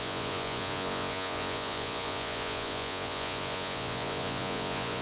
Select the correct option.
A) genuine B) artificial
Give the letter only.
B